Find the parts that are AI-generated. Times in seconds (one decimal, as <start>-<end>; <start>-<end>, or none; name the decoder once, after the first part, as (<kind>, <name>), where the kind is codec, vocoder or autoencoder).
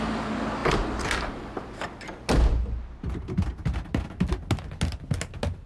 none